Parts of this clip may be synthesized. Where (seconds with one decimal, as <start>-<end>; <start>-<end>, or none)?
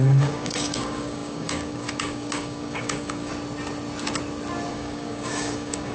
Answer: 0.0-3.3; 4.7-5.9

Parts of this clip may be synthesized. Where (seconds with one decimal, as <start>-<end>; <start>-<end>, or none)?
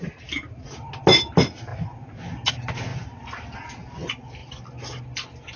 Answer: none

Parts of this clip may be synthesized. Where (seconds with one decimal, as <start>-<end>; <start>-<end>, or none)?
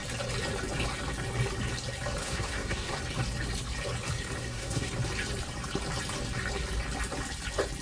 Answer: 2.2-3.0; 4.4-4.9